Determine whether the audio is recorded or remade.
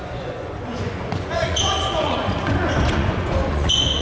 remade